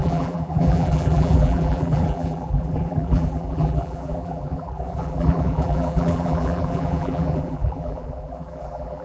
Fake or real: fake